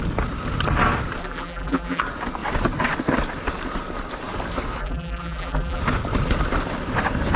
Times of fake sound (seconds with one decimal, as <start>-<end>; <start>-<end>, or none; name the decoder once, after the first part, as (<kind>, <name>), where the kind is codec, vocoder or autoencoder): 1.2-2.0 (vocoder, BigVGAN v2); 4.8-5.8